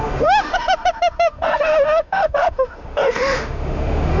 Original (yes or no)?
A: no